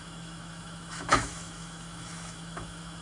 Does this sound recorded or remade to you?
remade